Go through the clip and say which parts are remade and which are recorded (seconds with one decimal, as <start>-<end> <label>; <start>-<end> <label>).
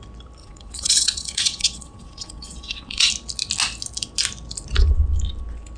0.0-0.4 recorded; 0.4-3.1 remade; 3.1-5.8 recorded